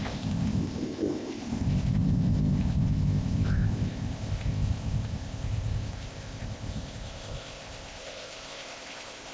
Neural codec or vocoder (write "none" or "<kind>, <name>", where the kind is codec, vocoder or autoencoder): codec, ZipCodec